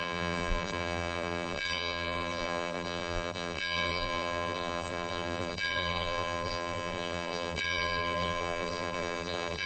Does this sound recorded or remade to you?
remade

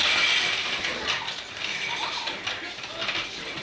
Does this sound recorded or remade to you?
recorded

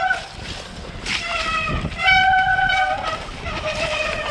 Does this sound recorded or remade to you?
recorded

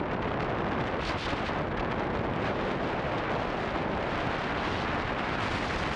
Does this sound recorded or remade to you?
recorded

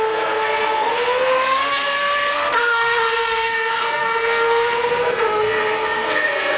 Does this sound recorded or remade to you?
remade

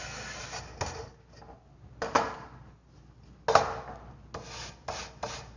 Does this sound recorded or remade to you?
recorded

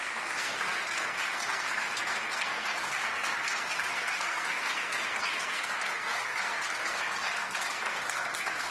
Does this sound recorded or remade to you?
remade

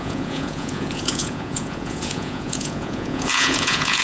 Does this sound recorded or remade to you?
remade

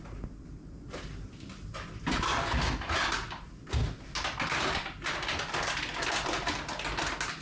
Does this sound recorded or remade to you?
recorded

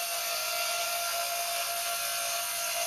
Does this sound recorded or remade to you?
recorded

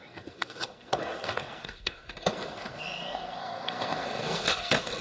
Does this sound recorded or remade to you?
remade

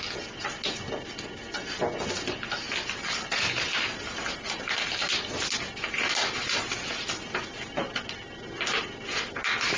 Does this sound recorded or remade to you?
recorded